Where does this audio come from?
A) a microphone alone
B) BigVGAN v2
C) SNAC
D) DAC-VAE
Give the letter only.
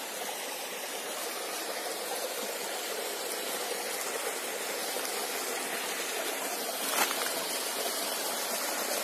A